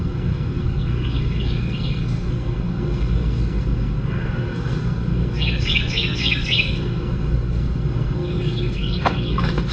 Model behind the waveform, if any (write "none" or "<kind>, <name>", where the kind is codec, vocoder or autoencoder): codec, SNAC